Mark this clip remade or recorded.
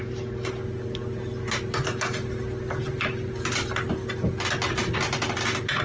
recorded